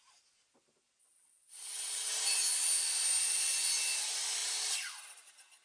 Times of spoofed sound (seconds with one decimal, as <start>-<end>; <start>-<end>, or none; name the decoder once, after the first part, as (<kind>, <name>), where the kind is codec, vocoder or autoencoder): 1.0-2.1 (vocoder, WaveNeXt)